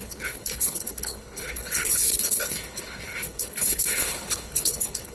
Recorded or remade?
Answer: remade